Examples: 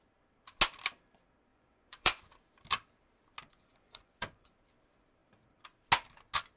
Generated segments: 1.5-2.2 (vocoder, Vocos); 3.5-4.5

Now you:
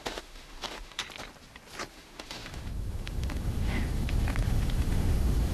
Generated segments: 0.0-1.0 (autoencoder, DAC-VAE); 1.9-5.5

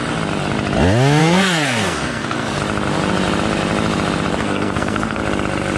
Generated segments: 1.2-2.6 (codec, SNAC); 4.3-5.2